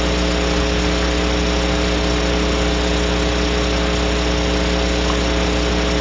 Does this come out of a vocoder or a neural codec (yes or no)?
no